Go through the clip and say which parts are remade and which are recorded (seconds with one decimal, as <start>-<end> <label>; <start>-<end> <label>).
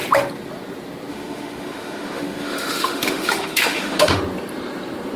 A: 0.0-1.1 recorded; 1.1-4.2 remade; 4.2-5.2 recorded